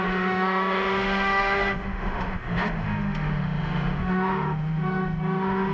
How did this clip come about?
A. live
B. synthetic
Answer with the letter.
B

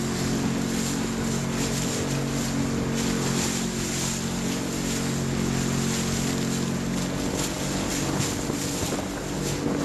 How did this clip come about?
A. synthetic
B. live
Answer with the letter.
B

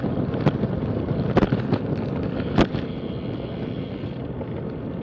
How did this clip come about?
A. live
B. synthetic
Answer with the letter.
A